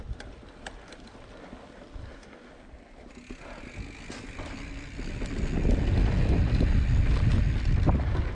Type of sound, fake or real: real